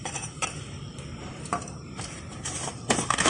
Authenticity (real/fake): fake